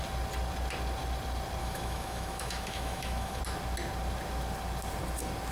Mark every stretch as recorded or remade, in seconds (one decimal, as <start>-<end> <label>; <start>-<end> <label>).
0.0-1.6 recorded; 1.6-3.4 remade; 3.4-5.5 recorded